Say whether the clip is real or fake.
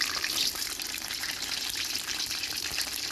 fake